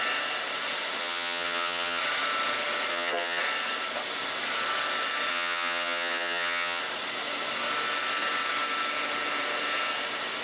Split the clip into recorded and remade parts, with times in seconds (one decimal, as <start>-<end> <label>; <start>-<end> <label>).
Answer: 0.0-1.0 recorded; 1.0-2.0 remade; 2.0-2.9 recorded; 2.9-3.4 remade; 3.4-5.3 recorded; 5.3-6.8 remade; 6.8-10.4 recorded